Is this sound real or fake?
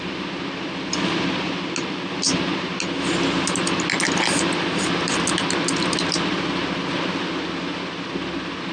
real